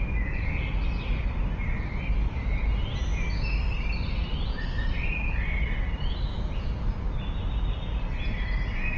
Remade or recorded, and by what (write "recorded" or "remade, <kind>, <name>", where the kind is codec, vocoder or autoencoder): recorded